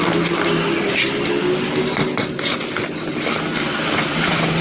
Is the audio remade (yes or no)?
no